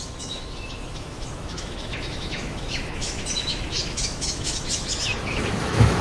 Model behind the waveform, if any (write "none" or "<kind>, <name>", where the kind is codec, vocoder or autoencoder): autoencoder, DAC-VAE